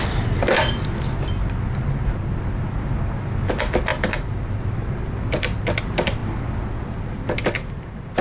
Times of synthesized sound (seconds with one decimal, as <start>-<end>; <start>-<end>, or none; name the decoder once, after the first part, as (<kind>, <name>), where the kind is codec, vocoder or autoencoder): none